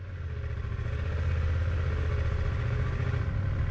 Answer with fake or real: real